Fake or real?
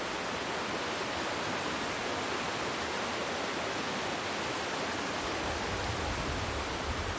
real